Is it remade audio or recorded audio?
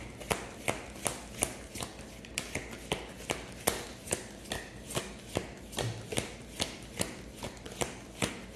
recorded